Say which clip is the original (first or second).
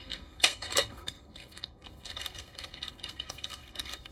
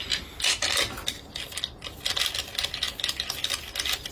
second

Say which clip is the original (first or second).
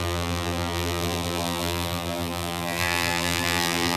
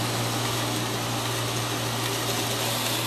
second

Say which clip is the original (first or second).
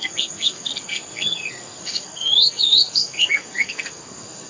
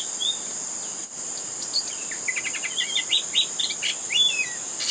second